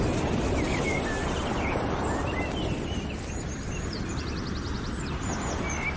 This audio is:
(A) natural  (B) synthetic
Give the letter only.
A